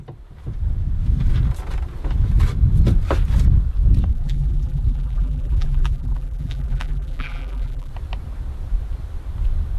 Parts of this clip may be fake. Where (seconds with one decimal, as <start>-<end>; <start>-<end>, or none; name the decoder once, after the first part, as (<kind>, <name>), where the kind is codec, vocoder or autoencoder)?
4.1-7.9 (vocoder, BigVGAN v2)